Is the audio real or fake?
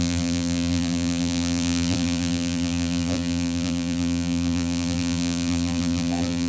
fake